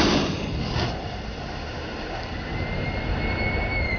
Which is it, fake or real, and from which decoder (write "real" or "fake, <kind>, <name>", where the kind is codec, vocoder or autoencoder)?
real